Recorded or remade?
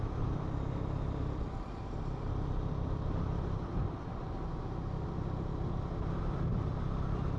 remade